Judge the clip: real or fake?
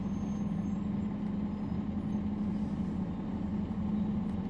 real